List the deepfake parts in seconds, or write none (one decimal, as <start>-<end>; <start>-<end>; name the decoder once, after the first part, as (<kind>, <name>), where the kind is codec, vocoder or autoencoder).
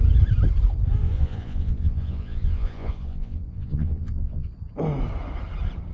1.0-4.5 (vocoder, Vocos)